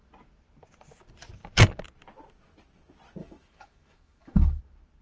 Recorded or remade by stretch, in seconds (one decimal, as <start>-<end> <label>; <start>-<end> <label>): 0.0-3.2 recorded; 3.2-4.6 remade; 4.6-5.0 recorded